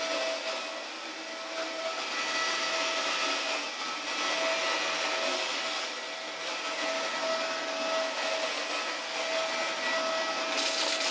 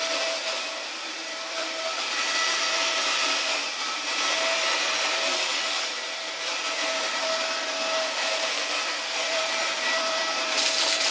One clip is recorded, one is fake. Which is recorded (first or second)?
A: first